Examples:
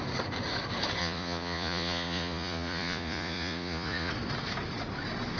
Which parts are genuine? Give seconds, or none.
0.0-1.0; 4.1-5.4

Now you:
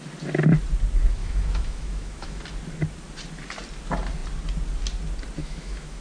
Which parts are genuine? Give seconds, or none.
0.0-1.2; 2.4-5.4

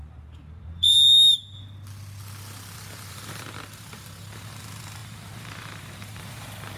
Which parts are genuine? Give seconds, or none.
0.9-3.1

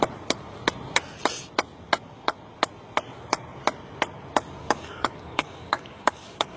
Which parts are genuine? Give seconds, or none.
0.0-4.6

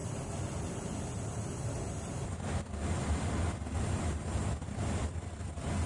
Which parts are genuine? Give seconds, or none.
0.0-5.9

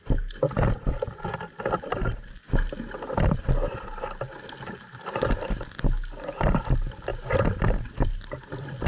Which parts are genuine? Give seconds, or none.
0.0-8.9

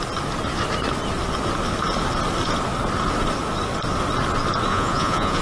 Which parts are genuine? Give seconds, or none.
0.0-4.7